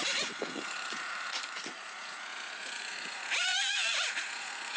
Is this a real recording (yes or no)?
no